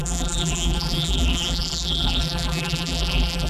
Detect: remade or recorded remade